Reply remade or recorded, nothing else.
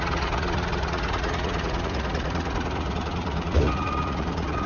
remade